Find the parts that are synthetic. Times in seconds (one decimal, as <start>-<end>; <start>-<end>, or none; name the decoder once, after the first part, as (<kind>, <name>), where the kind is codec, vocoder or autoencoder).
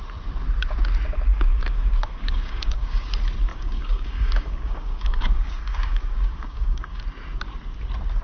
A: 1.3-3.1 (codec, DAC); 3.5-7.0